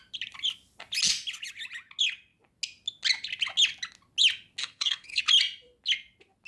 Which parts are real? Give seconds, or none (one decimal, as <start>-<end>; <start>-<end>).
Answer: 0.0-4.6; 5.2-6.5

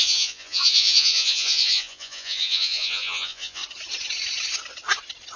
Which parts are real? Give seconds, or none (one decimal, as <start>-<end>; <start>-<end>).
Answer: 3.6-5.4

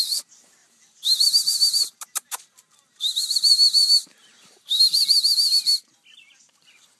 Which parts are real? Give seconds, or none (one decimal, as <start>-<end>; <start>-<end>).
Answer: 0.0-0.6; 4.8-7.0

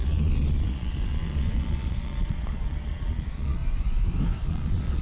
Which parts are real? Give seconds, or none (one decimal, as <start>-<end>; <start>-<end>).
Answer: 3.6-4.5

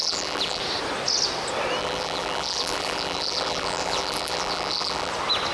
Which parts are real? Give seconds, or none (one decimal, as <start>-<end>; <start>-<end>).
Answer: 0.6-1.8; 5.1-5.5

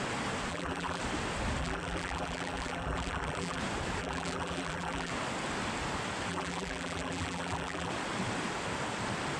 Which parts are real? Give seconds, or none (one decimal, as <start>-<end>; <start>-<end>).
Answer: 0.0-0.5; 1.0-1.6; 3.6-4.0; 5.1-6.3; 7.9-9.4

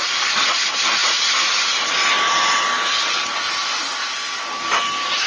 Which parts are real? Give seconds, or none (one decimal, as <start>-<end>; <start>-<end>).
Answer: 0.0-5.3

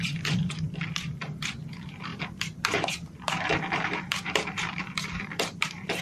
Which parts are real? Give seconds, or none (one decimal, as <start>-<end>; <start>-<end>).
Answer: none